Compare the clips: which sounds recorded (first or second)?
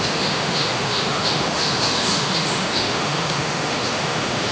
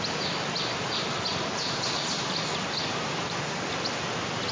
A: second